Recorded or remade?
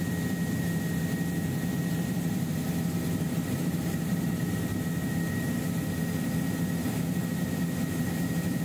remade